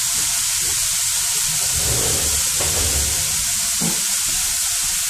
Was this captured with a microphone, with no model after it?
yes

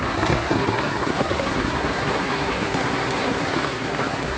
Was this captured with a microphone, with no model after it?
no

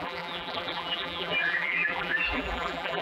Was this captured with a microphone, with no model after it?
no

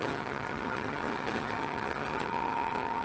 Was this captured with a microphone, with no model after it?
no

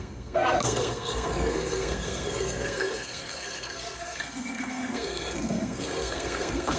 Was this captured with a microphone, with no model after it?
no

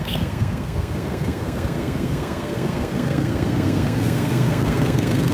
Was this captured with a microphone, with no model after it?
no